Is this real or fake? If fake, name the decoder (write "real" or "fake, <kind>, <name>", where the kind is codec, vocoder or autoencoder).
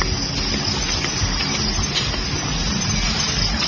real